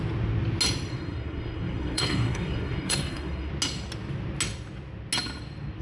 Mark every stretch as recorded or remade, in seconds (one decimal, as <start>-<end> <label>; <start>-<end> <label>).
0.0-0.9 recorded; 0.9-3.5 remade; 3.5-5.8 recorded